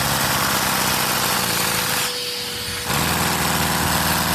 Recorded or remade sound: recorded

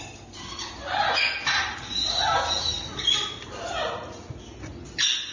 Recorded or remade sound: recorded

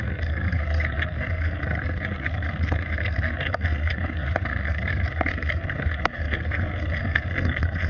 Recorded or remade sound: remade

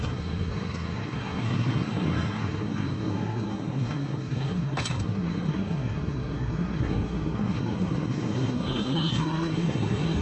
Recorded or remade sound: remade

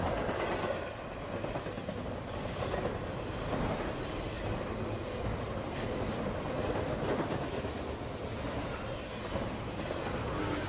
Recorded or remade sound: recorded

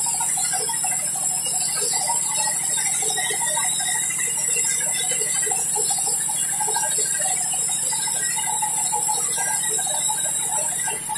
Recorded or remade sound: recorded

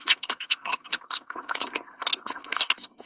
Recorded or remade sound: remade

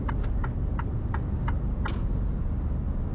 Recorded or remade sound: recorded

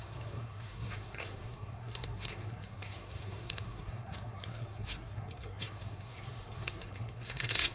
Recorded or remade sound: remade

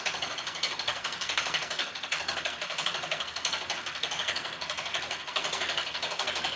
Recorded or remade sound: remade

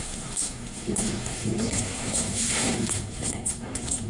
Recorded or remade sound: remade